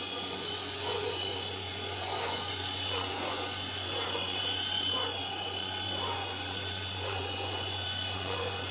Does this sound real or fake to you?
fake